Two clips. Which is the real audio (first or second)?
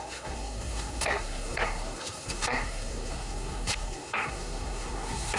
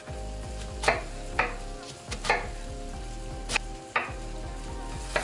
second